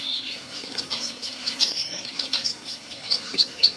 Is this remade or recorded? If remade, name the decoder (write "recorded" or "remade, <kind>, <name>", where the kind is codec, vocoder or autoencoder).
remade, codec, SNAC